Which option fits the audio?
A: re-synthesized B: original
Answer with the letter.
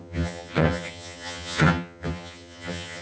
A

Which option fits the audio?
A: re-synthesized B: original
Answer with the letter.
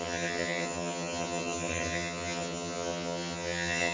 A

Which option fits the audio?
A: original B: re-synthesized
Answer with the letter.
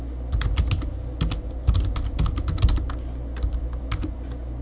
A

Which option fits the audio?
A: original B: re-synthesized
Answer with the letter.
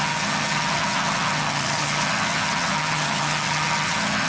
B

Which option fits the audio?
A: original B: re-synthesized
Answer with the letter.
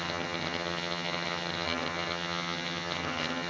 B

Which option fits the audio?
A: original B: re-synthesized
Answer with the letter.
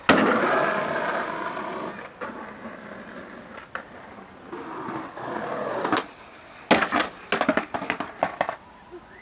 A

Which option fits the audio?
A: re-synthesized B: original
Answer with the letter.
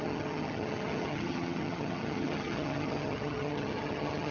A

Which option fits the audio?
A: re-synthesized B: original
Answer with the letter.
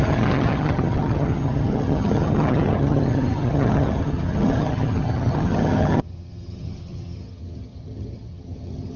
A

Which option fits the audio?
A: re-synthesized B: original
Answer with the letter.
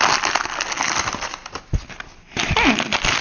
B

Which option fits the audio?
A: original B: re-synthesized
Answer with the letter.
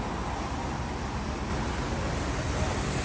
A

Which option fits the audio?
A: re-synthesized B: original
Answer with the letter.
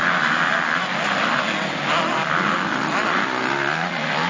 B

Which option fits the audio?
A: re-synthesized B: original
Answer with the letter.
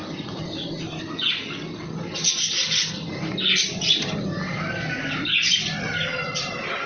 B